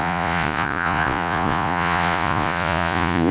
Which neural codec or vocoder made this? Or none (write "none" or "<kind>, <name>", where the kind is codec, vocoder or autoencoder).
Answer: vocoder, Vocos